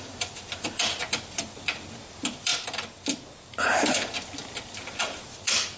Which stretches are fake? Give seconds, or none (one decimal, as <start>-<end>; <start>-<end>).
0.0-2.5; 3.6-5.8